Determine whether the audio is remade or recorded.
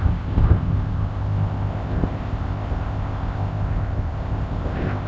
remade